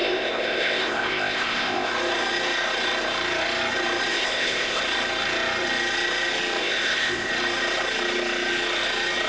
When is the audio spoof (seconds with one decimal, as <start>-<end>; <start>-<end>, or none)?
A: 0.0-1.9; 4.1-4.8; 6.6-7.3